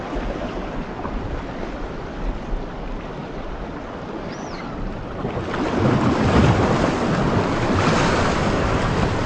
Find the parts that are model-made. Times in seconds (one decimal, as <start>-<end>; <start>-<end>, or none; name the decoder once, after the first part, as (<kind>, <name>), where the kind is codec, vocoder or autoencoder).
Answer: none